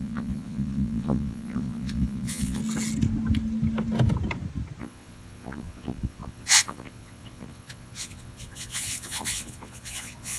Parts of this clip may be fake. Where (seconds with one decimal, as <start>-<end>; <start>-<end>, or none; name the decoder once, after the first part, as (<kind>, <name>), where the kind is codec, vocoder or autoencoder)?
0.0-2.6 (vocoder, Vocos); 4.8-10.4